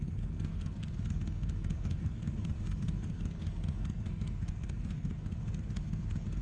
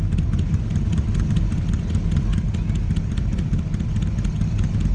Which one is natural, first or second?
second